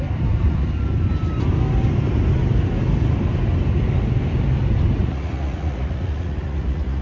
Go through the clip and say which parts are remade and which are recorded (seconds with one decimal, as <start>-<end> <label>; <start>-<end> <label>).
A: 0.0-5.0 recorded; 5.0-7.0 remade